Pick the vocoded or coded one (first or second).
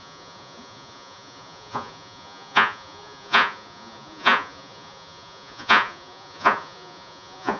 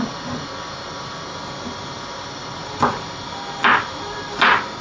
first